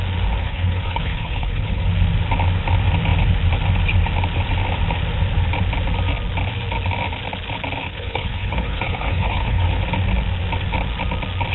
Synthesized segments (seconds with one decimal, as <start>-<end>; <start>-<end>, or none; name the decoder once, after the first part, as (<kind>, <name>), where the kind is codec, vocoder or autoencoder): 0.4-1.9 (codec, HILCodec); 7.8-9.8